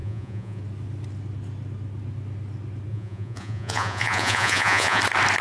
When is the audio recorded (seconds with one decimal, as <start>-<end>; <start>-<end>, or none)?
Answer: 0.6-2.9; 5.0-5.4